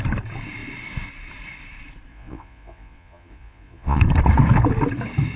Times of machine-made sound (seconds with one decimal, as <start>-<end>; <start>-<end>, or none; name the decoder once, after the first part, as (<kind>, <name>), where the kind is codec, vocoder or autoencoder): 2.1-4.0 (vocoder, Vocos)